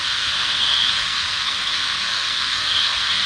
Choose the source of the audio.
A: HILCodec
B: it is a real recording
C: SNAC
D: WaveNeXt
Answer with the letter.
C